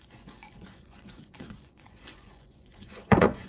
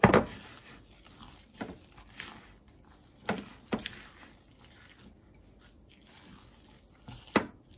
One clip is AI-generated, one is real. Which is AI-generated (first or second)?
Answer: first